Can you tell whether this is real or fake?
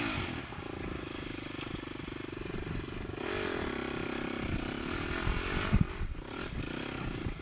real